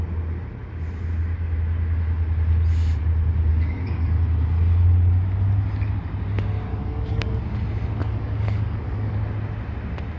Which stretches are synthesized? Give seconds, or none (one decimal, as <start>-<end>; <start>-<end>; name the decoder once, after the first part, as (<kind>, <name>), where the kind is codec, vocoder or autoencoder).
3.5-4.2 (codec, DAC); 6.7-7.4; 8.0-9.1

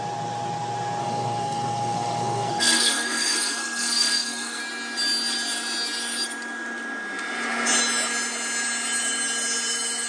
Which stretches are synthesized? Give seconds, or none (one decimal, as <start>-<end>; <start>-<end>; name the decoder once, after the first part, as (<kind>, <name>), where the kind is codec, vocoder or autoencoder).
1.0-4.6 (codec, SNAC)

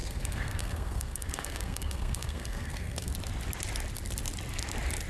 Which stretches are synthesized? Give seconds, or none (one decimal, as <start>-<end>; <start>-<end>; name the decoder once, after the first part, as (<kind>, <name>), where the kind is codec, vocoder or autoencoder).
0.0-3.1 (codec, SNAC)

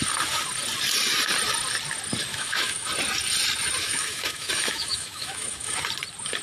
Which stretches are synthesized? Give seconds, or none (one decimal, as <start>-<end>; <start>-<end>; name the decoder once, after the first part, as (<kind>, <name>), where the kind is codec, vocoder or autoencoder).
2.3-2.9 (autoencoder, DAC-VAE); 3.8-5.8